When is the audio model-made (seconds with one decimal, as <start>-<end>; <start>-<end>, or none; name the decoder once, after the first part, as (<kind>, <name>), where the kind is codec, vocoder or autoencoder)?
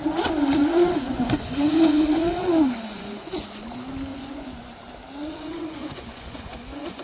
0.6-3.6 (vocoder, Vocos); 4.1-4.7; 5.2-7.0